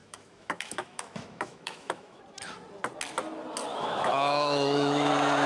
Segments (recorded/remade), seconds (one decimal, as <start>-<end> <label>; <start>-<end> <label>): 0.0-2.2 remade; 2.2-3.7 recorded; 3.7-5.1 remade; 5.1-5.5 recorded